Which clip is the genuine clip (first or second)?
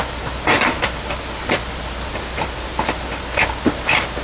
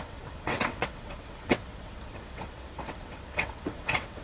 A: first